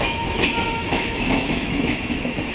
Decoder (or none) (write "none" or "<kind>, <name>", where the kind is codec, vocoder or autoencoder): autoencoder, DAC-VAE